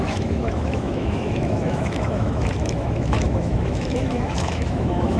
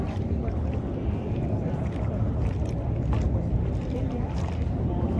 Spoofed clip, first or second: first